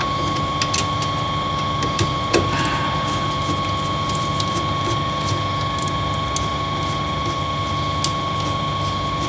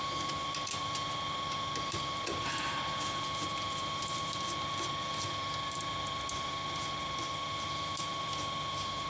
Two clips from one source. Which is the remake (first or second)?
second